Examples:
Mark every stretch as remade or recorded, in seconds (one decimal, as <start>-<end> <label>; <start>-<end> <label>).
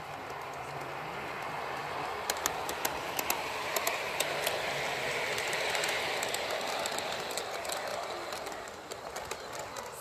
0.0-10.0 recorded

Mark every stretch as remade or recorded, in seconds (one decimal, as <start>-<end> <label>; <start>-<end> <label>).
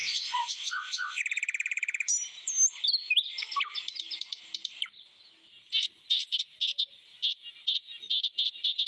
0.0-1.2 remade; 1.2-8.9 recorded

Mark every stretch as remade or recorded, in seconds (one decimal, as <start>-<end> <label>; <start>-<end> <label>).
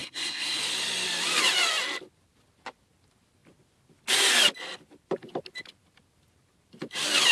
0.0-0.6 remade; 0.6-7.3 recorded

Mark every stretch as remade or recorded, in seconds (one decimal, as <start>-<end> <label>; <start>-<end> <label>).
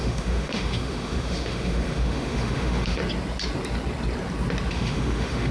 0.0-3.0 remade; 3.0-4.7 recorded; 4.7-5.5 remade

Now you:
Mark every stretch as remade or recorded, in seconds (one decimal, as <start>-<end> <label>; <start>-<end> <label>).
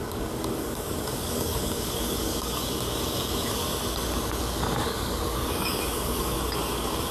0.0-3.6 remade; 3.6-4.4 recorded; 4.4-7.1 remade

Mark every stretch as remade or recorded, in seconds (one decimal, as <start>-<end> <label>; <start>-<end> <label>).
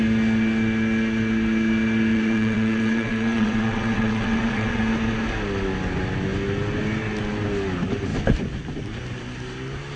0.0-2.1 recorded; 2.1-4.8 remade; 4.8-10.0 recorded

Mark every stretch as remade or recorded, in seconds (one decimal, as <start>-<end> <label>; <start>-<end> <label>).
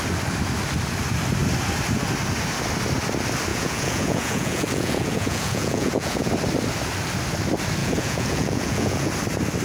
0.0-3.5 recorded; 3.5-6.3 remade; 6.3-7.8 recorded; 7.8-9.1 remade; 9.1-9.6 recorded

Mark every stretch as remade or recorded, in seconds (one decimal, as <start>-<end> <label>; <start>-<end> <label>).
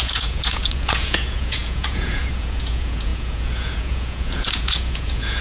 0.0-5.4 remade